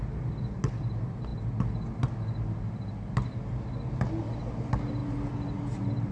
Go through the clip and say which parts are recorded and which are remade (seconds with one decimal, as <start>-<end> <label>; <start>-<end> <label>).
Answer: 0.0-6.1 recorded